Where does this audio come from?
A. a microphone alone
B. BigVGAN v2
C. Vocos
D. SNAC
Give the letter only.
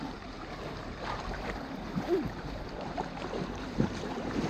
B